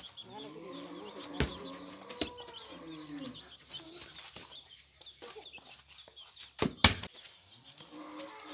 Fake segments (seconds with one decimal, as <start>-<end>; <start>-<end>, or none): 1.5-5.0